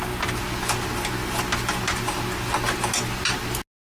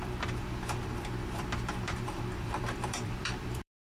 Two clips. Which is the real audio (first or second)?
first